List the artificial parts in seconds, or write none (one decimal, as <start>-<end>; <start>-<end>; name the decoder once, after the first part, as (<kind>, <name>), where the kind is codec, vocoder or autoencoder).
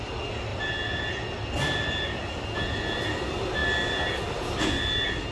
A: none